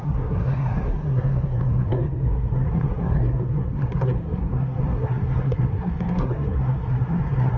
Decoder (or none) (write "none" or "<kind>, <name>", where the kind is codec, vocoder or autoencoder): codec, SNAC